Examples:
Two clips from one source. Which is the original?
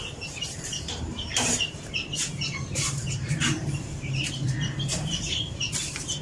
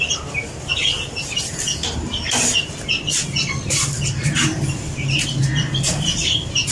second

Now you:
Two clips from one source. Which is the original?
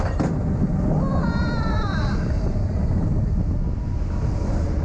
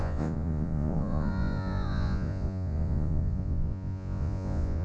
first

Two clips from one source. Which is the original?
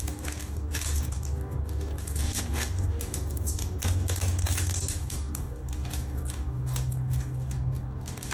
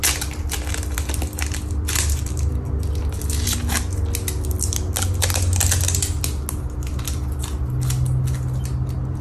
second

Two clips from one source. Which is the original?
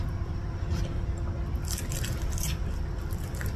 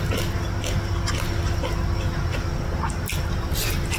second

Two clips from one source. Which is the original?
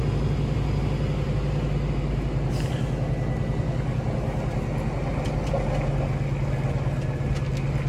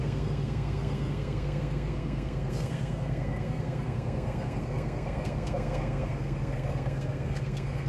first